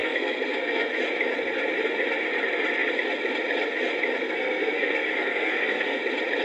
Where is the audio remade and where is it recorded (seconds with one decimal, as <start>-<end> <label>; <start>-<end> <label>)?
0.0-0.9 remade; 0.9-4.2 recorded; 4.2-6.0 remade; 6.0-6.4 recorded